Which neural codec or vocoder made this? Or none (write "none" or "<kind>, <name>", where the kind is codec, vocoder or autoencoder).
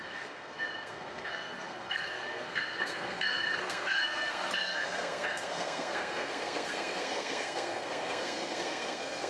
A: codec, SNAC